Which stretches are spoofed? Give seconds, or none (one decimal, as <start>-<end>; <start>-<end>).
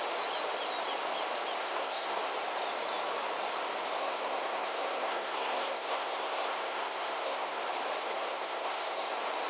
1.6-2.2; 4.0-7.6; 8.0-9.1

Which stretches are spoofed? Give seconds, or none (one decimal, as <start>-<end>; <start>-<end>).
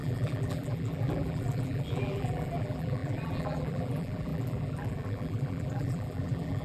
0.0-6.6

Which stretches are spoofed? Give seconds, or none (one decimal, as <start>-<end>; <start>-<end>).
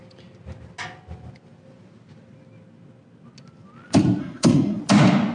4.2-4.8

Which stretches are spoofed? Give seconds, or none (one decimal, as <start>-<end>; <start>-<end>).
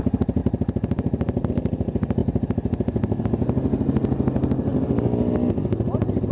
none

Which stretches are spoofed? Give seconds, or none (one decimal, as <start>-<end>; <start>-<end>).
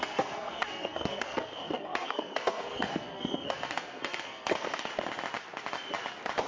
0.0-4.9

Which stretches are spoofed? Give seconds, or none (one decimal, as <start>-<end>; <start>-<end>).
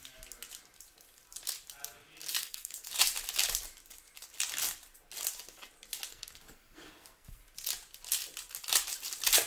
2.4-2.9; 6.1-7.4